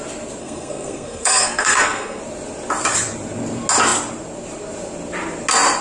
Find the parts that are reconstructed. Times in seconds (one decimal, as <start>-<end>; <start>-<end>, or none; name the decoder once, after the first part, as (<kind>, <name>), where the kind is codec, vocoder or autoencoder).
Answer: 0.4-2.2 (codec, SNAC)